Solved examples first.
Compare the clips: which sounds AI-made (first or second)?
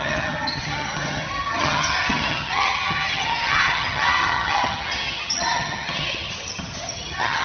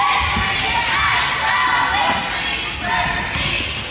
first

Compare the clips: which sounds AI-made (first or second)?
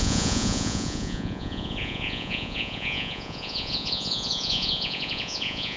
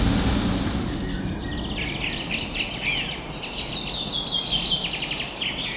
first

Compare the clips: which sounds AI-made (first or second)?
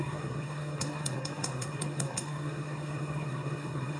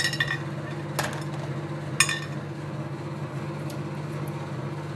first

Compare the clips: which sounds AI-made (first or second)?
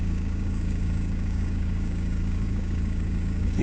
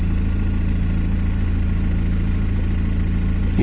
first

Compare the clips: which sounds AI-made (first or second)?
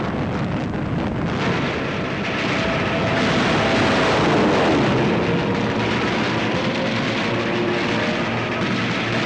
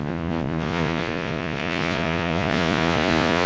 second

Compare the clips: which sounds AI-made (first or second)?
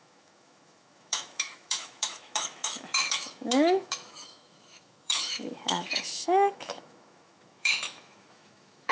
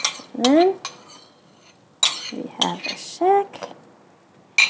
first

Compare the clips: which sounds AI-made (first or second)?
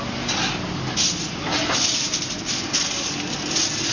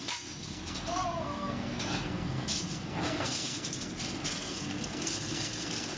second